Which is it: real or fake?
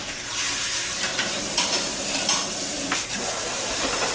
fake